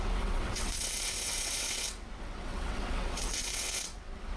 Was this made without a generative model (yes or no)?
no